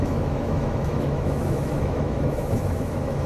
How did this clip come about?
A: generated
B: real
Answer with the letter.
A